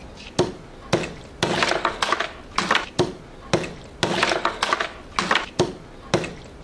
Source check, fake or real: real